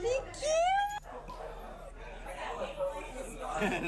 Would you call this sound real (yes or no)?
yes